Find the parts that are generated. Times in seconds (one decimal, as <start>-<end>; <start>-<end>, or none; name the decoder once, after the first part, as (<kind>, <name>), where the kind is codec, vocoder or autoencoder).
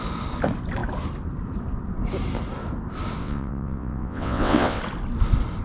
3.2-4.8 (vocoder, WaveNeXt)